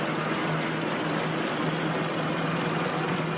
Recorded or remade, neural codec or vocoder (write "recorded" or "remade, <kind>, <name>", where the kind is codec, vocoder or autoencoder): recorded